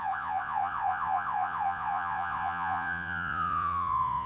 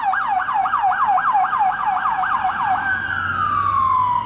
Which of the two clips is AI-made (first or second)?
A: first